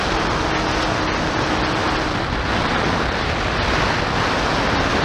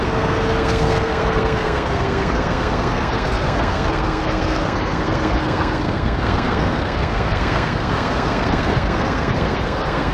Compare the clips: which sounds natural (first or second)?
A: first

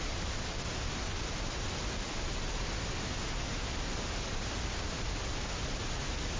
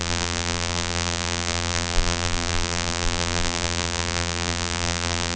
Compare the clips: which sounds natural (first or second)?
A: first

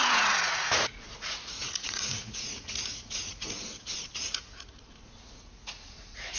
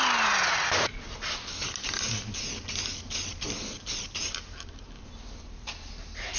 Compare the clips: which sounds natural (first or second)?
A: second